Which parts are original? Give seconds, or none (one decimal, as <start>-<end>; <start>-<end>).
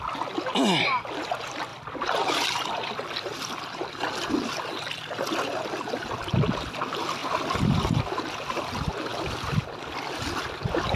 0.0-1.7; 4.3-7.2; 8.0-10.9